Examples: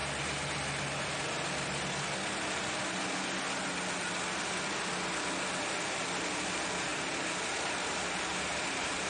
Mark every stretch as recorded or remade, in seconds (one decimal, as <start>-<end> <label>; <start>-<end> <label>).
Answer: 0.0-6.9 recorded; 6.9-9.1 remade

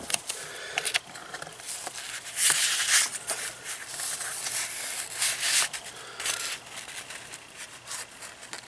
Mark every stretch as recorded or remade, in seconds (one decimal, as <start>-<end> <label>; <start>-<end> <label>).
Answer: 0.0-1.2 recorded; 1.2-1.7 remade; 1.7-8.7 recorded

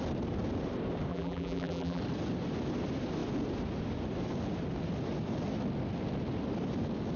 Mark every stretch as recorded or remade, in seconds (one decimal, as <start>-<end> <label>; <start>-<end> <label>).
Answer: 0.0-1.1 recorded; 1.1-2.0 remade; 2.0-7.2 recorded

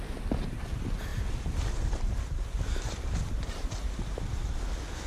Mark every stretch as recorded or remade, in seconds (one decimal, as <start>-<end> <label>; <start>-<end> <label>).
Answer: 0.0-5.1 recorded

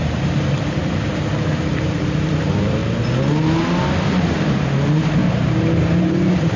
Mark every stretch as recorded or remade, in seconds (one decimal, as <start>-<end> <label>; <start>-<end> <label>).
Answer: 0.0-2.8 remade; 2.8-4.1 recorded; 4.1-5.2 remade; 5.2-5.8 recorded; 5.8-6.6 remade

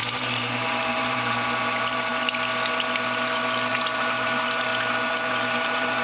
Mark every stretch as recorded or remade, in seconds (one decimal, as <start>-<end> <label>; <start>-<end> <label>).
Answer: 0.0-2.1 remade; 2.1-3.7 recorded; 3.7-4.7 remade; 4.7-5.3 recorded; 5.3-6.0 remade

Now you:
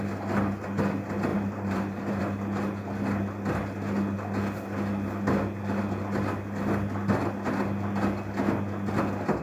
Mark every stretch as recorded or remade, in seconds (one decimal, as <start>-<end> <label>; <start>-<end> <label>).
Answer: 0.0-1.3 recorded; 1.3-2.2 remade; 2.2-9.4 recorded